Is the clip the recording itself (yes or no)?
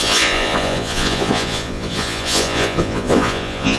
no